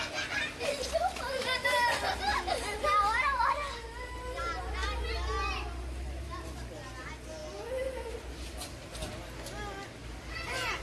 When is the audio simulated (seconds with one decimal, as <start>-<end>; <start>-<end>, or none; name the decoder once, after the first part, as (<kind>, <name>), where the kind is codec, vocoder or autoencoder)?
none